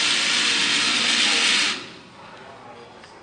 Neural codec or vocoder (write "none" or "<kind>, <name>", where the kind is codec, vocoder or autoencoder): none